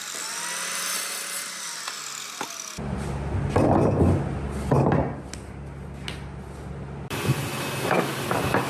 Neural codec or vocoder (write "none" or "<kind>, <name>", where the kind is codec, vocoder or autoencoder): none